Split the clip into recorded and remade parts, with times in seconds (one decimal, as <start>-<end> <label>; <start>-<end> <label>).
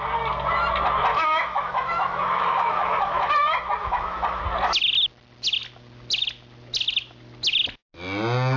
0.0-1.1 recorded; 1.1-3.3 remade; 3.3-3.8 recorded; 3.8-4.4 remade; 4.4-8.6 recorded